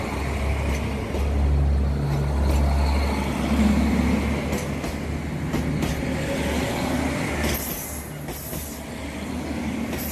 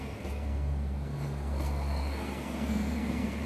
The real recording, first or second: first